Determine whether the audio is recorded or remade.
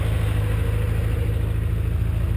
recorded